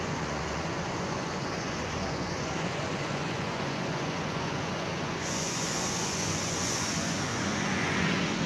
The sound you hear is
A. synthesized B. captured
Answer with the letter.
A